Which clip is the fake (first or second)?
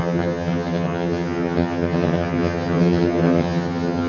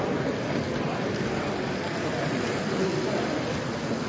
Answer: first